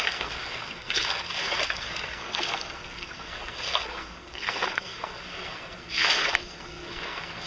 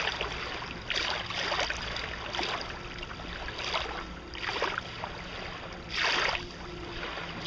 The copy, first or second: first